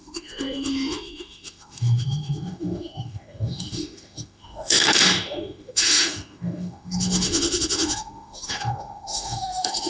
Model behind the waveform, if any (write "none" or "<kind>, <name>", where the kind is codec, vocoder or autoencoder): autoencoder, DAC-VAE